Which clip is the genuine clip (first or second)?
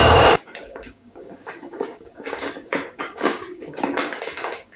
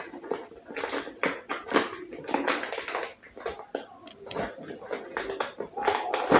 second